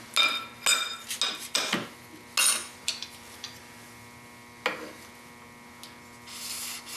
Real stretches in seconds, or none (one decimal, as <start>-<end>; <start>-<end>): 0.0-2.6; 3.6-7.0